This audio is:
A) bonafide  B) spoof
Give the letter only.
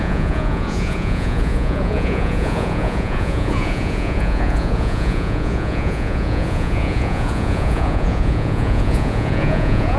B